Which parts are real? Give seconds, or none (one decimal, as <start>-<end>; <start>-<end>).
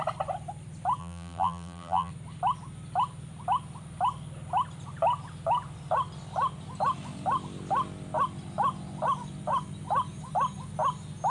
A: 0.0-1.0; 2.1-11.3